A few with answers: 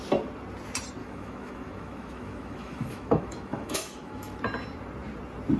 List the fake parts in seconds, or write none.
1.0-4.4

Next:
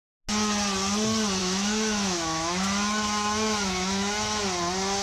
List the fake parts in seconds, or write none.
1.4-4.4

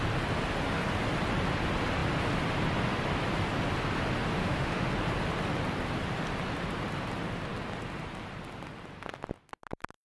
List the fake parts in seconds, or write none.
4.4-4.9

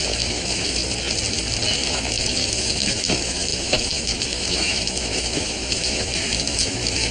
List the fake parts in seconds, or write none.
0.0-0.8; 1.9-7.1

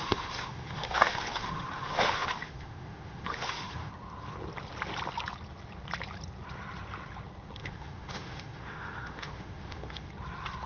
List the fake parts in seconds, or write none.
0.0-3.9; 7.6-10.1